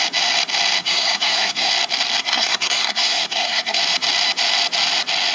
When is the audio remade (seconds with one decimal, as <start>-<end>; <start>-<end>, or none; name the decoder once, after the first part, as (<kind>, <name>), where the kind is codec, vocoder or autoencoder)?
0.8-1.7 (codec, SNAC); 2.2-3.8